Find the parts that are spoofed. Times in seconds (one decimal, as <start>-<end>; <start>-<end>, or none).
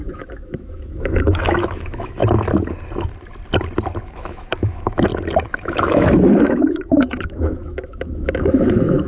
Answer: 0.0-2.2; 4.0-5.1; 5.6-9.1